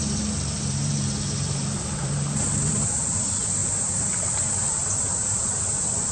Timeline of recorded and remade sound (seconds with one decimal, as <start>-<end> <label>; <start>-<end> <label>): 0.0-3.6 remade; 3.6-6.1 recorded